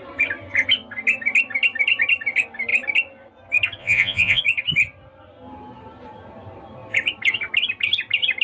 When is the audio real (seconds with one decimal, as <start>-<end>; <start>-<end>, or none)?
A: 0.0-3.8; 4.4-8.4